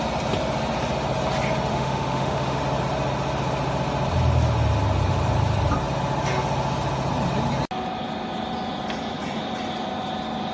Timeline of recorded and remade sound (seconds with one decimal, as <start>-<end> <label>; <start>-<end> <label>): 0.0-1.7 recorded; 1.7-2.6 remade; 2.6-10.5 recorded